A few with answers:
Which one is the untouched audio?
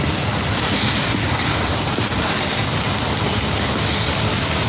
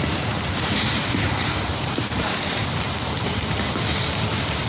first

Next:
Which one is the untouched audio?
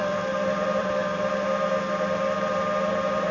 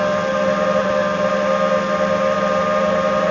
second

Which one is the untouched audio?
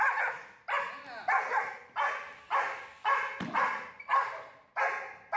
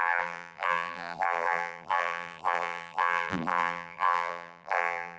first